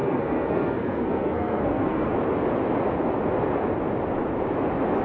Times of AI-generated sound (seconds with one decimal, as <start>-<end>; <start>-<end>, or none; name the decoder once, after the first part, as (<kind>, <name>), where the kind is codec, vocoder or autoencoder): 0.0-2.1 (codec, SNAC)